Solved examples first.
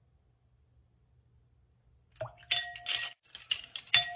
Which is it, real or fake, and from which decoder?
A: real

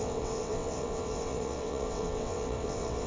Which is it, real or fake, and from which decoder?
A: fake, vocoder, WaveNeXt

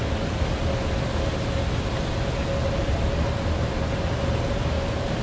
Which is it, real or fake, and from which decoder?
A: real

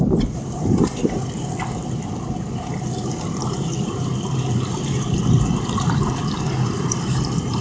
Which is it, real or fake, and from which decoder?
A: fake, vocoder, BigVGAN v2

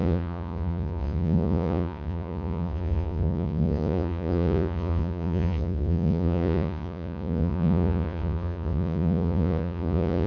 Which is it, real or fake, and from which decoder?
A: fake, vocoder, Vocos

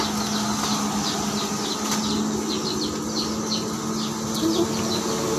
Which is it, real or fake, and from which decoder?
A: real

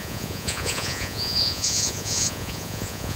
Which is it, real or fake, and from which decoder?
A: fake, vocoder, Vocos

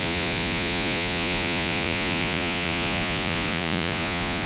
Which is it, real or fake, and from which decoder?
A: fake, vocoder, Vocos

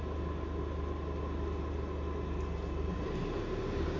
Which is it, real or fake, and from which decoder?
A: real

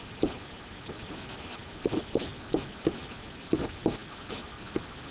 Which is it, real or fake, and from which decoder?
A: real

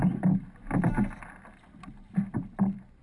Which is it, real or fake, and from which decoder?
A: real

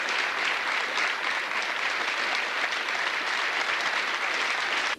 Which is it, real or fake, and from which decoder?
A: real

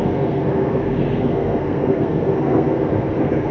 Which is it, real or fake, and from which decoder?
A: fake, codec, SNAC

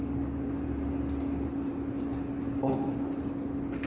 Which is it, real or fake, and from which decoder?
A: real